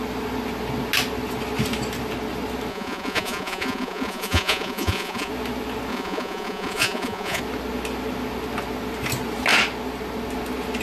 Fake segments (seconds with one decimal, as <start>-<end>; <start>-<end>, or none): 2.7-5.3; 5.9-7.4